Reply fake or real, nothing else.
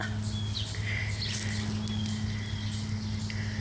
real